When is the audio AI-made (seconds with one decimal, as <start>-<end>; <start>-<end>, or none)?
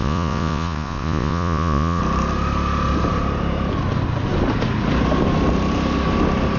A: 0.0-2.0